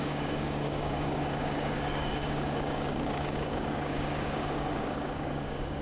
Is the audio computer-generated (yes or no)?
yes